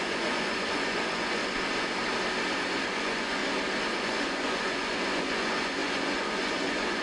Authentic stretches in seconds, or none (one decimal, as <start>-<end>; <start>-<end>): 1.4-2.8; 3.4-4.0